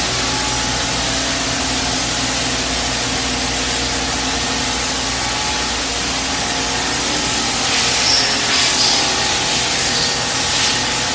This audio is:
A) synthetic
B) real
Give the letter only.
B